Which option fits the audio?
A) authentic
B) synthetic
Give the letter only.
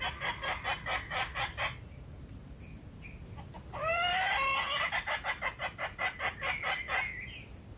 A